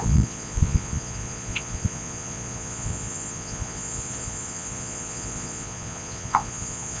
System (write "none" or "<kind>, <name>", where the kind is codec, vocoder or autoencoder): vocoder, Vocos